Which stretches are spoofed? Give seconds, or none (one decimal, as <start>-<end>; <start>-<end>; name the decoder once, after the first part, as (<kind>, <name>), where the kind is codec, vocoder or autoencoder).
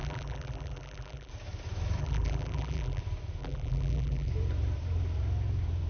0.0-1.3 (vocoder, BigVGAN v2); 2.0-3.0; 3.4-4.3